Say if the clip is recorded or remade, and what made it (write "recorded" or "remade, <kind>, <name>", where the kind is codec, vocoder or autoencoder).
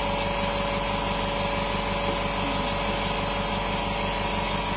recorded